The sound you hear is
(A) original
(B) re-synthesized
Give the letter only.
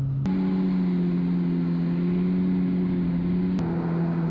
A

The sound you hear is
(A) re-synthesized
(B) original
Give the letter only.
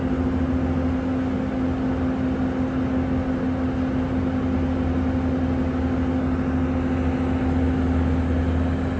B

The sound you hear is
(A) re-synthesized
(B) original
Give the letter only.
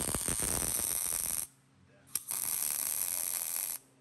B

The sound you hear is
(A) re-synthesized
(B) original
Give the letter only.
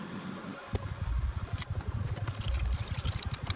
B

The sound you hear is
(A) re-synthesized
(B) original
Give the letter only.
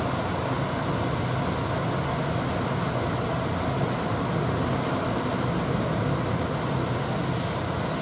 B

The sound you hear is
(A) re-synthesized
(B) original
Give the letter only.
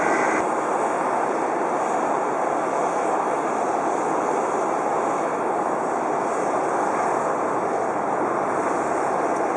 B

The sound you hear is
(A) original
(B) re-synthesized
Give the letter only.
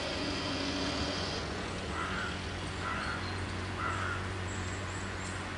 B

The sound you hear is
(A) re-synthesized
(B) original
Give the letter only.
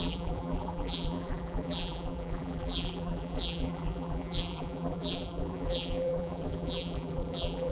A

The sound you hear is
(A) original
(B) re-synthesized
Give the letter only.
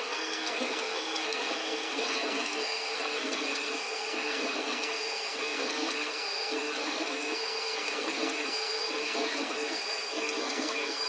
B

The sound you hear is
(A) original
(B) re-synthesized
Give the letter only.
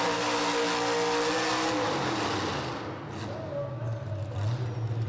A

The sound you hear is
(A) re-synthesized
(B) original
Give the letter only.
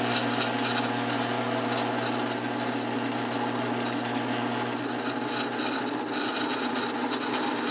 B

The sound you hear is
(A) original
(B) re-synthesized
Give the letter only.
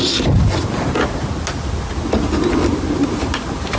A